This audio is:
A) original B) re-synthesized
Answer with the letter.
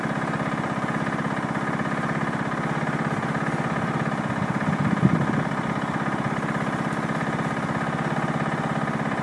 A